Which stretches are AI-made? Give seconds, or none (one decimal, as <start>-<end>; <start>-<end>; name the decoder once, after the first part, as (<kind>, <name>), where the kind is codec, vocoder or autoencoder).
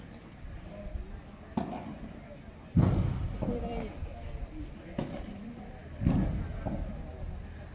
none